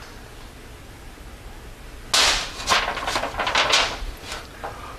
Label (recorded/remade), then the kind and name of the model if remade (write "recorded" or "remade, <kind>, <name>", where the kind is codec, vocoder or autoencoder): recorded